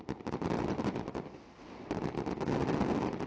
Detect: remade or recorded recorded